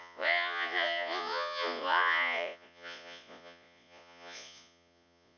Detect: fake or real fake